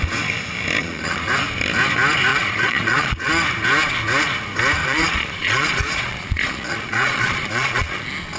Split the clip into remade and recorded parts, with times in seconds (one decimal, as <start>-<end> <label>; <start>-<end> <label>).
0.0-0.8 recorded; 0.8-1.3 remade; 1.3-2.3 recorded; 2.3-3.3 remade; 3.3-4.8 recorded; 4.8-8.0 remade; 8.0-8.4 recorded